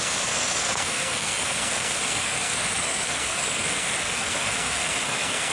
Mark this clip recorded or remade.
remade